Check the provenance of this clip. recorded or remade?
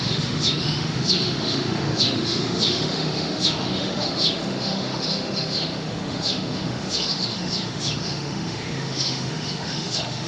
remade